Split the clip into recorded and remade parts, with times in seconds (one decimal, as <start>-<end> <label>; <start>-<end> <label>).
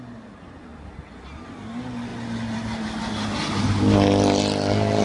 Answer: 0.0-5.0 recorded